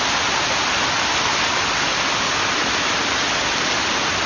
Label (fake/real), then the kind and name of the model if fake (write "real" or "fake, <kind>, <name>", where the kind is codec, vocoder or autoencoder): real